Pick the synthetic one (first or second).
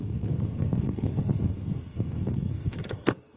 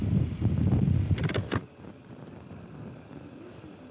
first